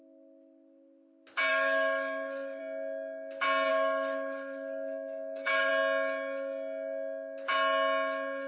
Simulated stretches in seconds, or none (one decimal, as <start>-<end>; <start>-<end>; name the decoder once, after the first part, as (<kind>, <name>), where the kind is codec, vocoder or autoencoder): 1.5-2.6 (codec, DAC); 3.7-5.7